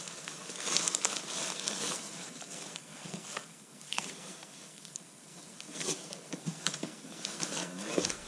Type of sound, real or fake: fake